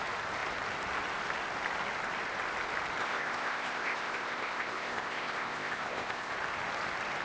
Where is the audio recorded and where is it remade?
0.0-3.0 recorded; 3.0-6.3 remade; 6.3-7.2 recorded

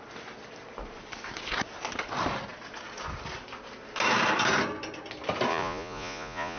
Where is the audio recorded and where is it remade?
0.0-5.5 recorded; 5.5-6.6 remade

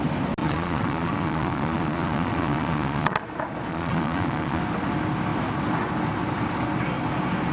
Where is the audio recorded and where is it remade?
0.0-0.4 recorded; 0.4-3.2 remade; 3.2-3.7 recorded; 3.7-4.6 remade; 4.6-7.5 recorded